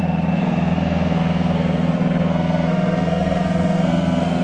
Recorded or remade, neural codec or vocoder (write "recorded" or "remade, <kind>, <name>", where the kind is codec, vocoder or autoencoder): remade, codec, SNAC